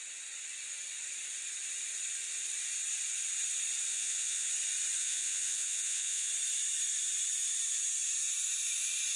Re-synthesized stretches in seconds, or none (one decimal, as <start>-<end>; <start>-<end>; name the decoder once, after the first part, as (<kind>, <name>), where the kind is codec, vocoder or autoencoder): 3.9-4.5 (vocoder, Vocos); 5.0-6.3